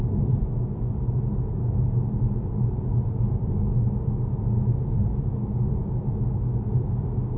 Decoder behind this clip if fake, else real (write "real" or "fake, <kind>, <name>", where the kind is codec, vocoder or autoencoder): real